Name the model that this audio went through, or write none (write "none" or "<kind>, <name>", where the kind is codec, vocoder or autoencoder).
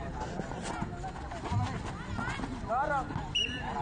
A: none